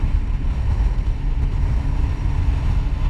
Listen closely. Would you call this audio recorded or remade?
recorded